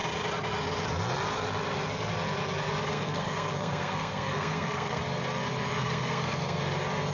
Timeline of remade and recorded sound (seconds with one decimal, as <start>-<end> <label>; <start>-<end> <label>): 0.0-2.9 recorded; 2.9-5.0 remade; 5.0-5.8 recorded; 5.8-6.6 remade; 6.6-7.1 recorded